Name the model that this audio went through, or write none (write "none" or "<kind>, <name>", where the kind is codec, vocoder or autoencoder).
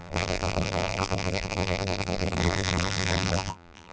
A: vocoder, BigVGAN v2